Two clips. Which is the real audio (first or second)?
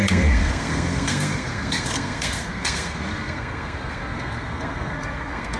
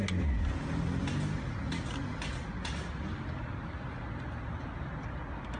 second